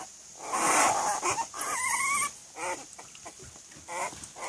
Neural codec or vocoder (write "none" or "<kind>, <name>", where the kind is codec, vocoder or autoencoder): none